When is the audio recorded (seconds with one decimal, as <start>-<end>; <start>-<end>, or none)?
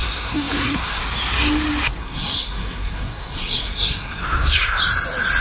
1.0-2.0; 4.8-5.4